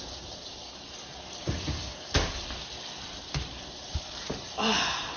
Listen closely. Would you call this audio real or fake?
real